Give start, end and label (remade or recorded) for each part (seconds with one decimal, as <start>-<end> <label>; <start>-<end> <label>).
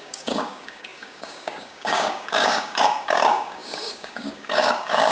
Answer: 0.0-5.1 remade